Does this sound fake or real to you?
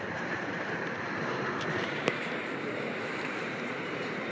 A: fake